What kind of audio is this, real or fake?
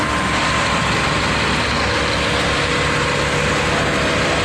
real